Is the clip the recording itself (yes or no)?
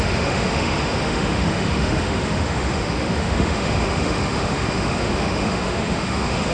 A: no